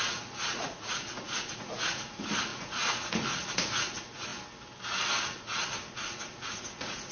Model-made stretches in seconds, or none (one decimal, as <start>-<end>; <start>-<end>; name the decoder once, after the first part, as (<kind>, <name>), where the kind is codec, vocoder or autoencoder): 0.0-4.3 (vocoder, Vocos); 5.2-7.1